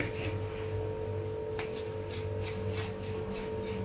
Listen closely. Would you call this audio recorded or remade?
recorded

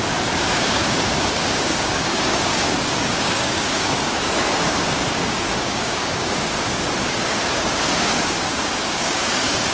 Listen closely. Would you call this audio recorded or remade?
remade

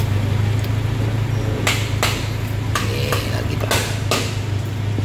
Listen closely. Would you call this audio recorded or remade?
recorded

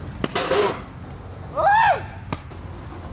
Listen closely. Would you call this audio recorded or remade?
recorded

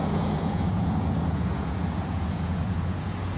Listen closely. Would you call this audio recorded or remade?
remade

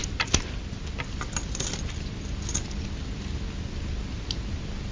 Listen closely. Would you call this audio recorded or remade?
recorded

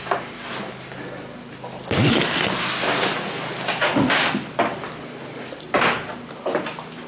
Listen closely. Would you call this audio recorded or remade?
recorded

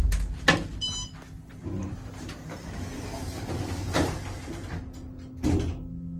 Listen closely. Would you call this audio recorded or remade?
recorded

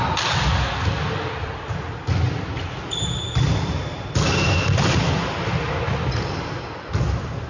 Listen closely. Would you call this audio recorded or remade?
recorded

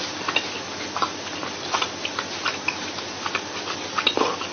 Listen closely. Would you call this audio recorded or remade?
recorded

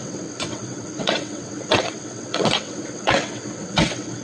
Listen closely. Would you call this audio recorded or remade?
remade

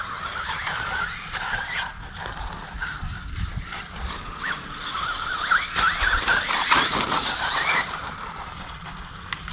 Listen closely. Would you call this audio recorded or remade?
recorded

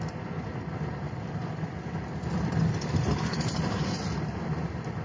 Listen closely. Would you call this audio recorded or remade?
recorded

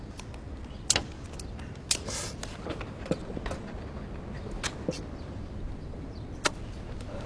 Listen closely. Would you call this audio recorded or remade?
recorded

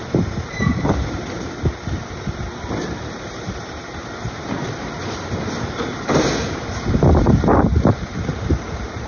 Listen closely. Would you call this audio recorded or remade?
remade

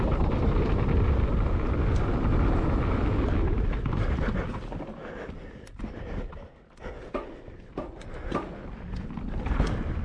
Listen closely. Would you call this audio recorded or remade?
recorded